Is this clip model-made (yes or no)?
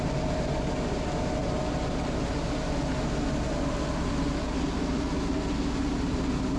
no